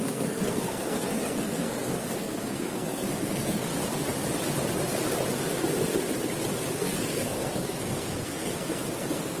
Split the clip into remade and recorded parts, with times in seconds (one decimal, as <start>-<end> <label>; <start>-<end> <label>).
0.0-3.7 remade; 3.7-6.7 recorded; 6.7-9.4 remade